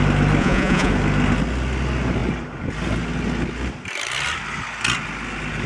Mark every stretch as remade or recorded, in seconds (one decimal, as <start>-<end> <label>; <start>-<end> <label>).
0.0-0.4 recorded; 0.4-0.9 remade; 0.9-5.7 recorded